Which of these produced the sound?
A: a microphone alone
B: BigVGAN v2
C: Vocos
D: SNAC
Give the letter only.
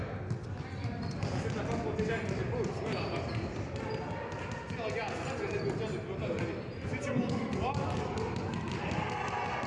A